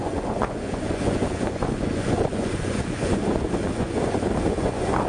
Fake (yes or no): yes